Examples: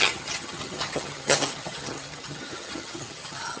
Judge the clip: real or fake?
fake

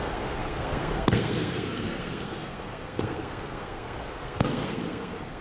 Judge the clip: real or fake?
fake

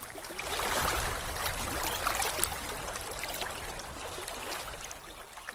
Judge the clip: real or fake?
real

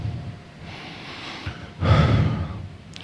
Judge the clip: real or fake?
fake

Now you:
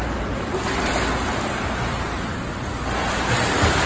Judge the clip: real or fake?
real